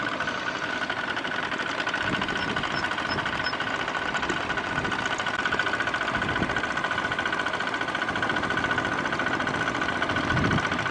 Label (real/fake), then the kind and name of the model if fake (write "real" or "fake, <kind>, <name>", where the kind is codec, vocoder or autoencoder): real